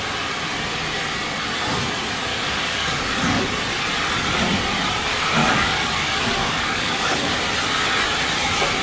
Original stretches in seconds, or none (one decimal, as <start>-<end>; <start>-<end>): 0.0-2.3; 3.4-5.4; 7.3-8.8